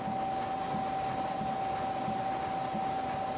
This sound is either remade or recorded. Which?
recorded